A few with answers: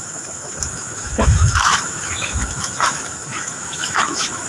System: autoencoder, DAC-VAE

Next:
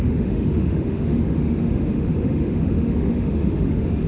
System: autoencoder, DAC-VAE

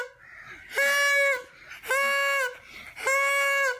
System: none